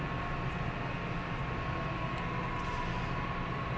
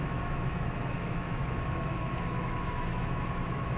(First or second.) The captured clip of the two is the first